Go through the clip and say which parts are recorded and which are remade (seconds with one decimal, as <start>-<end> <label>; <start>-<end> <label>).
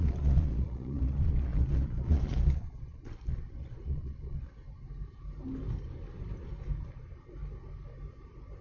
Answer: 0.0-4.6 remade; 4.6-8.6 recorded